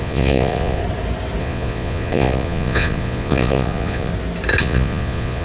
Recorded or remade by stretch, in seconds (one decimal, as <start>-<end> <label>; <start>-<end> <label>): 0.0-0.8 remade; 0.8-1.4 recorded; 1.4-4.1 remade; 4.1-4.6 recorded; 4.6-5.4 remade